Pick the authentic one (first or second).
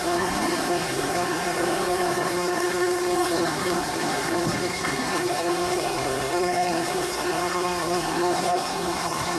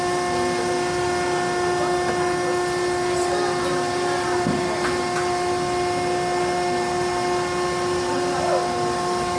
second